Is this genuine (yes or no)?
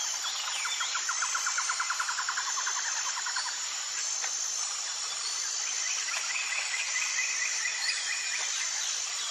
no